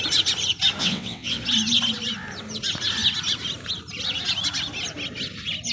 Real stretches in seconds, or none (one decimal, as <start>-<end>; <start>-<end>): 0.0-0.8; 1.4-5.7